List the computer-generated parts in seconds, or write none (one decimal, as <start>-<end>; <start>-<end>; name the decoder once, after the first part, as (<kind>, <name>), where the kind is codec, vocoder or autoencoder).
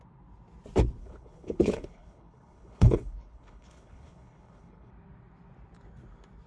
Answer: 1.0-4.9 (codec, HILCodec)